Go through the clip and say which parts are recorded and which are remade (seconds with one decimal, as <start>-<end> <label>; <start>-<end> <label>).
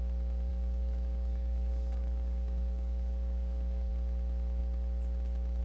0.0-0.5 recorded; 0.5-3.9 remade; 3.9-5.6 recorded